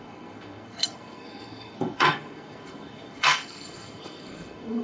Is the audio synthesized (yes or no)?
yes